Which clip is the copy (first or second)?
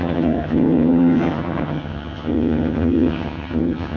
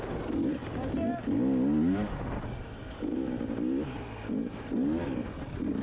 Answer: first